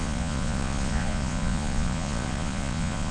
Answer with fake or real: fake